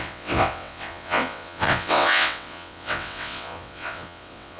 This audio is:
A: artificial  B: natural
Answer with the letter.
A